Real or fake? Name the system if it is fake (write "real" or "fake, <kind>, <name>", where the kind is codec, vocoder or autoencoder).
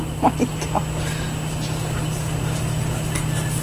real